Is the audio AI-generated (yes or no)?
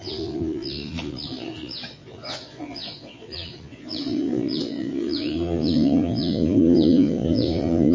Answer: yes